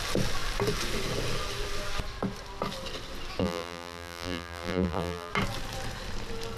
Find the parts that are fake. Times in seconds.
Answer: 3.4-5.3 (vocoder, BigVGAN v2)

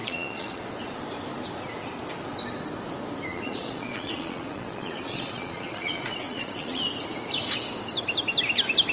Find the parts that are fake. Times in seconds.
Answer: 0.0-0.6 (vocoder, Vocos); 3.3-6.8